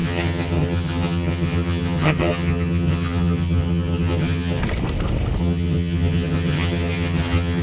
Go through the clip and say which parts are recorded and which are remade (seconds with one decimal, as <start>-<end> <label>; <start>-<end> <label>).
0.0-4.6 remade; 4.6-5.4 recorded; 5.4-7.6 remade